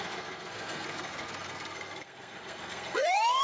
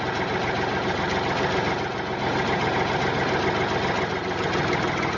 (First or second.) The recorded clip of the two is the second